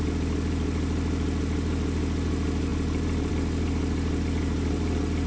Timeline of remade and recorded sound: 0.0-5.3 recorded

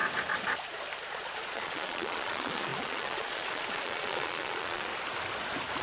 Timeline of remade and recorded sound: 0.0-1.1 recorded; 1.1-4.9 remade; 4.9-5.8 recorded

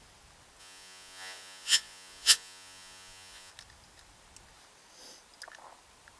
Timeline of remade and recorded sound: 0.0-0.6 recorded; 0.6-3.5 remade; 3.5-6.2 recorded

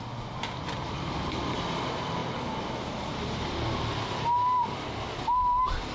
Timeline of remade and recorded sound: 0.0-5.9 recorded

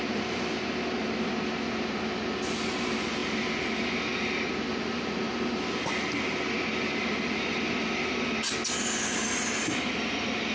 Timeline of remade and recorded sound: 0.0-10.5 recorded